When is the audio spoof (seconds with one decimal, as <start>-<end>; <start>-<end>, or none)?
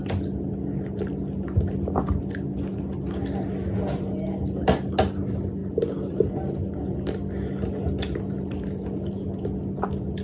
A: none